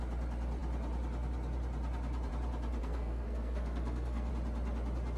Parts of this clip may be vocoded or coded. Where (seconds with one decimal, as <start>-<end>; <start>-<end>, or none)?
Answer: 2.8-4.3